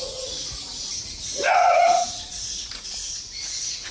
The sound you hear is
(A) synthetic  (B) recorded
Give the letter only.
A